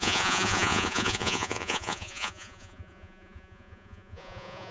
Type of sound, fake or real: fake